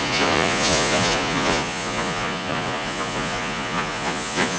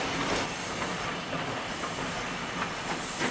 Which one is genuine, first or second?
second